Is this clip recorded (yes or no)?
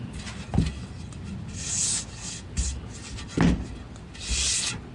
yes